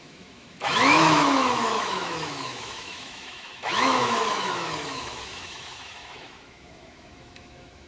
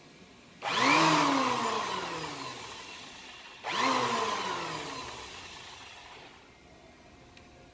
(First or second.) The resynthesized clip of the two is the first